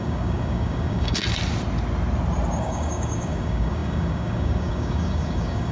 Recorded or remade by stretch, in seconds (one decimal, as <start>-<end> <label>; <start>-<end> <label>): 0.0-1.2 remade; 1.2-2.6 recorded; 2.6-5.7 remade